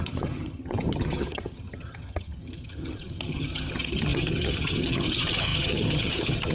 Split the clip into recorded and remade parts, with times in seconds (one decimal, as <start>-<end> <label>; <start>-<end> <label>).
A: 0.0-6.5 remade